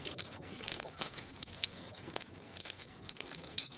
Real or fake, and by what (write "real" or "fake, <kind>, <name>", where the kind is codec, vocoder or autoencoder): fake, codec, SNAC